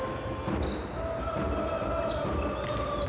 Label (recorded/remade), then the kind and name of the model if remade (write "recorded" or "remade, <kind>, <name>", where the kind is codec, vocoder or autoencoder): recorded